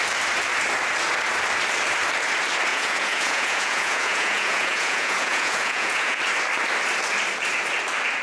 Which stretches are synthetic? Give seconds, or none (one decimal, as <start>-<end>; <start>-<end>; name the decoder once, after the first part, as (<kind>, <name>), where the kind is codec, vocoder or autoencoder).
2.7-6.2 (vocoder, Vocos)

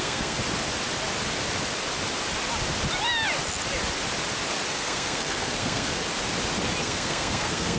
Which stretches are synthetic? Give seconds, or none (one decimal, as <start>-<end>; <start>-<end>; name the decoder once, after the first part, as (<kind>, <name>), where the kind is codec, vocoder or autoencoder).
0.0-0.4 (codec, SNAC); 4.7-6.0; 6.8-7.8

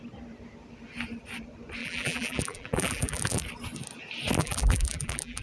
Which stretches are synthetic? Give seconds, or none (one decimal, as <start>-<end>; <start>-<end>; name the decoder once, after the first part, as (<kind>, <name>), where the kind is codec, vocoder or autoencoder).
1.8-3.4 (vocoder, BigVGAN v2); 4.4-5.4

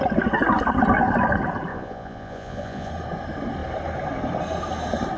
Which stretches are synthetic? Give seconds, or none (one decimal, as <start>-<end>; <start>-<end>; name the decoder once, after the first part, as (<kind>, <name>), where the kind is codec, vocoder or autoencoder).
1.7-2.9 (vocoder, Vocos)